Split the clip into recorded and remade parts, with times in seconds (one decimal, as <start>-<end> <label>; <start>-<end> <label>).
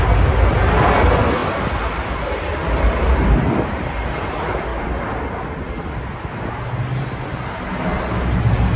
0.0-8.8 recorded